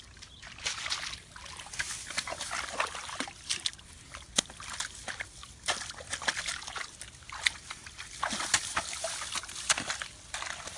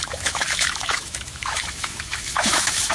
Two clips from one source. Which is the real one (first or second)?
first